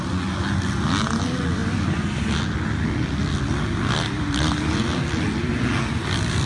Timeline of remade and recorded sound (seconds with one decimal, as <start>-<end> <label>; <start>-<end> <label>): 0.0-6.5 recorded